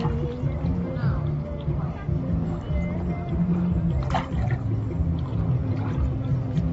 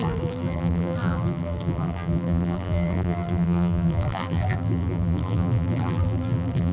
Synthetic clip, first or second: second